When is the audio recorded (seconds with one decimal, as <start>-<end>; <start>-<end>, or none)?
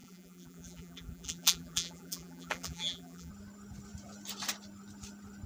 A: 3.3-5.5